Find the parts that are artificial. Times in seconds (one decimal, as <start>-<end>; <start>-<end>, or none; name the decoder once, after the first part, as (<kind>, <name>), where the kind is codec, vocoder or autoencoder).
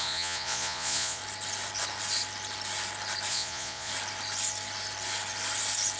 0.0-1.2 (vocoder, Vocos); 3.3-3.9